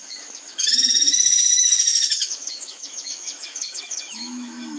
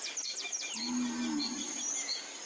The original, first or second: second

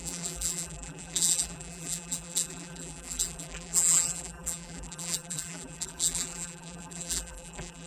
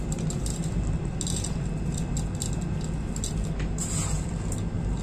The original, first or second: second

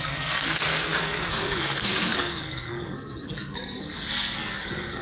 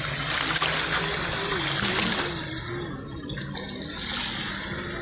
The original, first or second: second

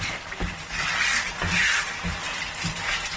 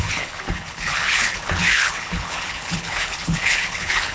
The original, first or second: first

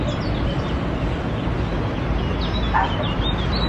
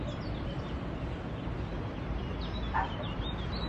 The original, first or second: first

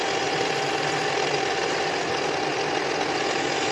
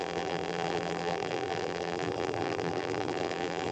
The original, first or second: first